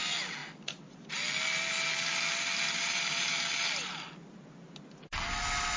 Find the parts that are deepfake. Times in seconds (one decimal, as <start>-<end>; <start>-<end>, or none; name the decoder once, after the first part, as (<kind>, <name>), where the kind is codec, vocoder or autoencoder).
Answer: none